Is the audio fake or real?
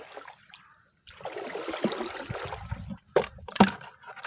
real